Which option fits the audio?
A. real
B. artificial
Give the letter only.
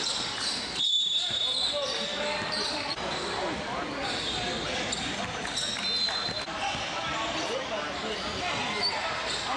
A